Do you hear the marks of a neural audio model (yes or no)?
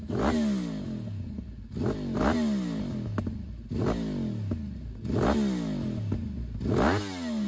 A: no